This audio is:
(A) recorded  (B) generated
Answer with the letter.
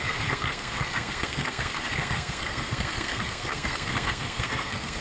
B